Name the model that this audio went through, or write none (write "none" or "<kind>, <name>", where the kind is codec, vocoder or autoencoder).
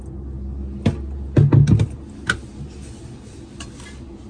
none